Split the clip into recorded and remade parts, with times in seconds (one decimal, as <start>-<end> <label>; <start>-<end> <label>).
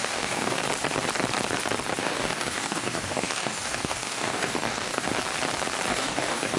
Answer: 0.0-0.6 remade; 0.6-2.0 recorded; 2.0-5.1 remade; 5.1-5.9 recorded; 5.9-6.6 remade